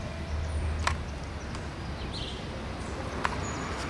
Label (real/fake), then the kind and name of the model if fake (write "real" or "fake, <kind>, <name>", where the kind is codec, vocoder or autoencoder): real